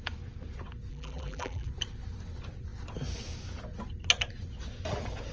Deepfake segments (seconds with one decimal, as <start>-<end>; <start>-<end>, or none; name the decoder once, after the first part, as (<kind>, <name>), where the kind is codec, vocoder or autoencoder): 0.9-1.7 (vocoder, BigVGAN v2)

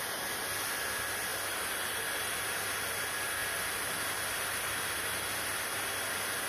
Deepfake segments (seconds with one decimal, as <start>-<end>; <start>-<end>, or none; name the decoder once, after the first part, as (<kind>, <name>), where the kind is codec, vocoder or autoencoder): 1.3-2.5 (vocoder, BigVGAN v2)

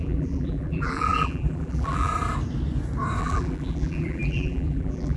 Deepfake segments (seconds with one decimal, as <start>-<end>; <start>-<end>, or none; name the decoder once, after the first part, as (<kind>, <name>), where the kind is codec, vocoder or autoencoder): 0.0-2.1 (vocoder, BigVGAN v2); 3.2-5.2

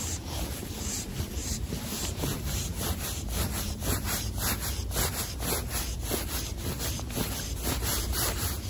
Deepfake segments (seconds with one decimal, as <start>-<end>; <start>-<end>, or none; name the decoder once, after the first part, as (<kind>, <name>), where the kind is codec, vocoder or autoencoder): 0.0-4.5 (vocoder, BigVGAN v2); 7.9-8.7

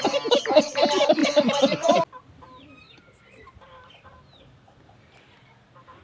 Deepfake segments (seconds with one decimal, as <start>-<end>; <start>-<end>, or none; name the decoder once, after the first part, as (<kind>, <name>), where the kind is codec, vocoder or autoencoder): none

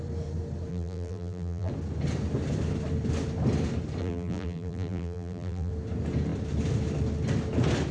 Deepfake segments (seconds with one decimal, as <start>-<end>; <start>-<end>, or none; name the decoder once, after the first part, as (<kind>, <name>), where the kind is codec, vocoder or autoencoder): 0.7-1.7 (vocoder, BigVGAN v2); 4.0-5.7